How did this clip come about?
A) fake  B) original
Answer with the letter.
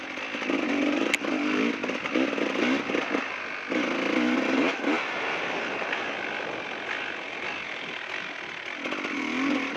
B